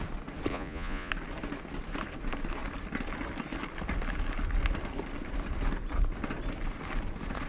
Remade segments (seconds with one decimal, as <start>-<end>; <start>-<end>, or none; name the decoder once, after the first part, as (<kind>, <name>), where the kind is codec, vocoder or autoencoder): 0.5-1.1 (vocoder, Vocos)